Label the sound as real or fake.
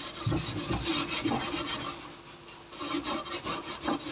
real